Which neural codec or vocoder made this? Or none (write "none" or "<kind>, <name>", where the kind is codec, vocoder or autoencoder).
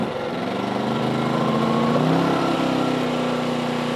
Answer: none